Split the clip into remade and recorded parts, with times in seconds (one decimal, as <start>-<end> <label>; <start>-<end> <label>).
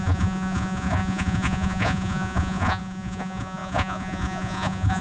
0.0-5.0 remade